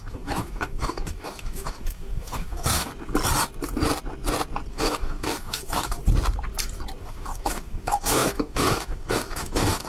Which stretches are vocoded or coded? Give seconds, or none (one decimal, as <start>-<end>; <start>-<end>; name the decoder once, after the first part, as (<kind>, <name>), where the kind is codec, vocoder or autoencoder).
0.0-2.9 (codec, DAC); 4.7-6.0; 7.0-9.9

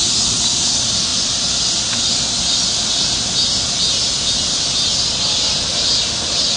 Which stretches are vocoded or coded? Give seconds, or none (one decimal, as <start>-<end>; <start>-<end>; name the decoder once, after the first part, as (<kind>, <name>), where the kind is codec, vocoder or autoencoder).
none

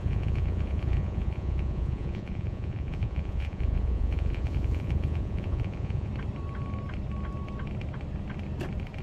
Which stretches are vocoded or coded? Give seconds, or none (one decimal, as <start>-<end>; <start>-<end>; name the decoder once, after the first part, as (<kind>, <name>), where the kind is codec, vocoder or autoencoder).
0.0-6.1 (vocoder, Vocos)

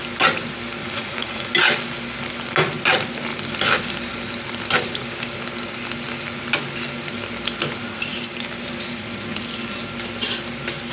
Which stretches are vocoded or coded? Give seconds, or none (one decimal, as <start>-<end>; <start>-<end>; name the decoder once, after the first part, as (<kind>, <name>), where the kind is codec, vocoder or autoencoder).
0.8-1.5 (vocoder, Vocos)